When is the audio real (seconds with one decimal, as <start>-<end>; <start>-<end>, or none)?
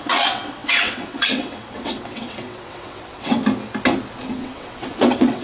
3.4-4.3